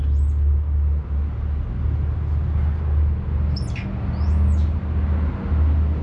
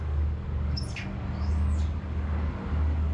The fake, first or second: second